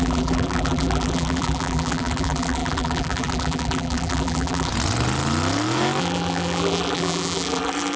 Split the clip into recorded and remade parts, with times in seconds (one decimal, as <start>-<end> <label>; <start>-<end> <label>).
0.0-4.7 remade; 4.7-6.0 recorded; 6.0-8.0 remade